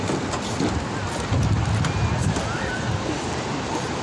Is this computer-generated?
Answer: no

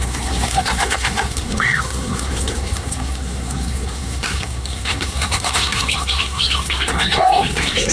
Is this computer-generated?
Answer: yes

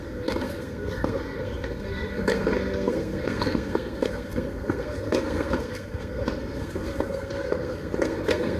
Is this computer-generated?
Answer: yes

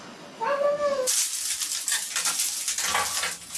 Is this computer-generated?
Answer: no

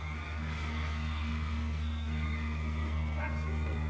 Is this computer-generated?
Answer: yes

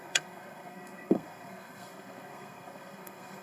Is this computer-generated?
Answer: yes